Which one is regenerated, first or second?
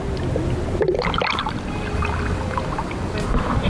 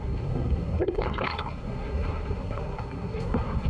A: second